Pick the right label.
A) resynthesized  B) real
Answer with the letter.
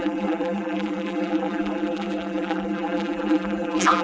A